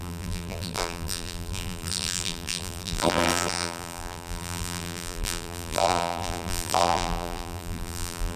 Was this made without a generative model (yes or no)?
no